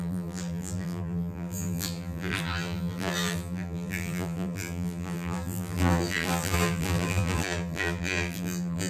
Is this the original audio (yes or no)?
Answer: no